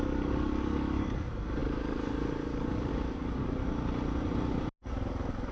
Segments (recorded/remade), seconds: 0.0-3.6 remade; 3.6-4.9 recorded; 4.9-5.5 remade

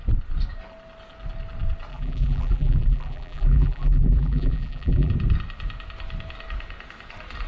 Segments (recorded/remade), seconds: 0.0-1.9 recorded; 1.9-5.1 remade; 5.1-7.5 recorded

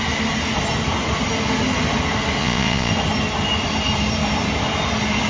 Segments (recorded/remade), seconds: 0.0-2.4 recorded; 2.4-2.9 remade; 2.9-5.3 recorded